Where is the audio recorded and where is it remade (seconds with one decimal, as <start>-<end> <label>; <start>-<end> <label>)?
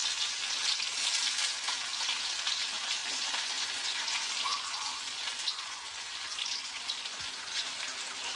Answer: 0.0-3.0 recorded; 3.0-7.8 remade; 7.8-8.4 recorded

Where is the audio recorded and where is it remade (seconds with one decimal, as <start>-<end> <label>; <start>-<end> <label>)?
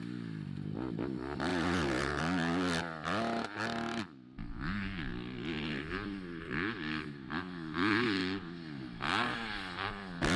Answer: 0.0-1.5 recorded; 1.5-2.2 remade; 2.2-10.4 recorded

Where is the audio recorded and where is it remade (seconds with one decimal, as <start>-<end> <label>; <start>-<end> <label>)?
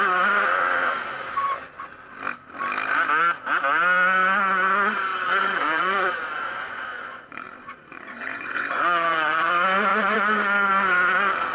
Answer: 0.0-5.1 recorded; 5.1-9.5 remade; 9.5-9.9 recorded; 9.9-10.7 remade; 10.7-11.5 recorded